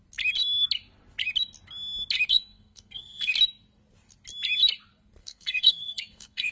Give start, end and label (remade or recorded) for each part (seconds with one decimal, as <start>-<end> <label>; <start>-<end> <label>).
0.0-2.3 recorded; 2.3-3.3 remade; 3.3-5.2 recorded; 5.2-6.5 remade